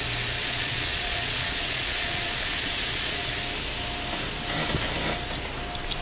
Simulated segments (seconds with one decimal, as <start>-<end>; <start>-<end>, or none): 0.4-3.3